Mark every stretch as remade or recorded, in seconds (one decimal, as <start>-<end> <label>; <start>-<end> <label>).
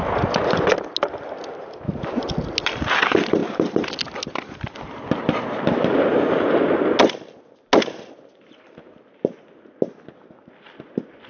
0.0-11.3 recorded